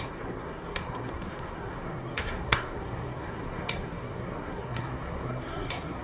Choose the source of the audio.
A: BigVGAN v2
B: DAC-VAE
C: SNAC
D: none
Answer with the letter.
C